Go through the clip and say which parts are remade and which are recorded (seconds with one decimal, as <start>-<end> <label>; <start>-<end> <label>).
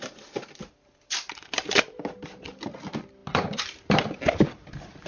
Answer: 0.0-5.1 recorded